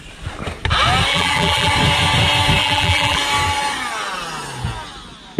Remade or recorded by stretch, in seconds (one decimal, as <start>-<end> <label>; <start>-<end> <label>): 0.0-1.1 recorded; 1.1-1.7 remade; 1.7-2.6 recorded; 2.6-3.2 remade; 3.2-5.4 recorded